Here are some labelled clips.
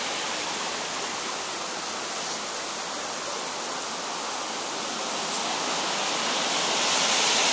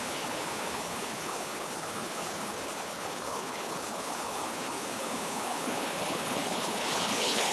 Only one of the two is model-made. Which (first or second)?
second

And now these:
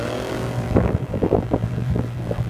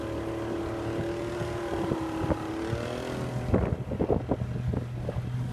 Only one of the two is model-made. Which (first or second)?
first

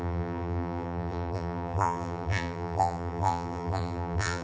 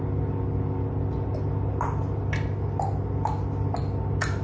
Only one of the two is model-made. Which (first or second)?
first